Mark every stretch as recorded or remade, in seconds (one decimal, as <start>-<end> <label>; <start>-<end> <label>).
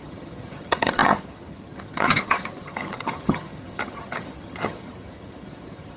0.0-6.0 remade